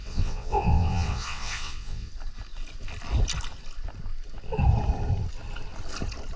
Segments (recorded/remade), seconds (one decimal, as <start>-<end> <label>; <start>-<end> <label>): 0.0-2.1 remade; 2.1-6.4 recorded